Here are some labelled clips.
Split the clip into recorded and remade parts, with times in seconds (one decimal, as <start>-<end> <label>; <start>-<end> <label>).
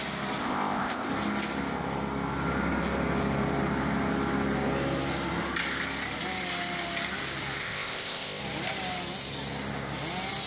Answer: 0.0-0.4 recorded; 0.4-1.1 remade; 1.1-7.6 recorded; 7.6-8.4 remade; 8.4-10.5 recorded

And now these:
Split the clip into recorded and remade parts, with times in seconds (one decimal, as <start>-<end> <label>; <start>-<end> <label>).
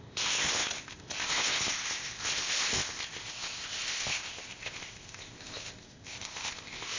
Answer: 0.0-7.0 remade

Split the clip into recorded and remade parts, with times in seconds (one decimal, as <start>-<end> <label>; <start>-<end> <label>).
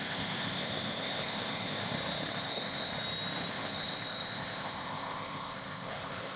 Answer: 0.0-1.8 remade; 1.8-2.4 recorded; 2.4-2.9 remade; 2.9-3.5 recorded; 3.5-6.4 remade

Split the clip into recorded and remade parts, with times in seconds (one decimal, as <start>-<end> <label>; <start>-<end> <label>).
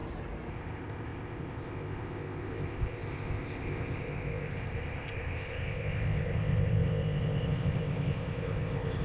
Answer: 0.0-0.5 recorded; 0.5-9.0 remade